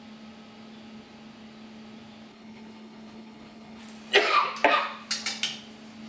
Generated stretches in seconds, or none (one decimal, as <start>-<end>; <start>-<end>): 2.3-3.8